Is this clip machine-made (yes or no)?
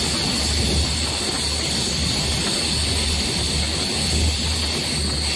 no